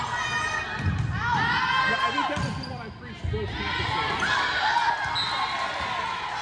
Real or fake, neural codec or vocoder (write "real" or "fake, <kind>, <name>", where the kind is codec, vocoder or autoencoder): real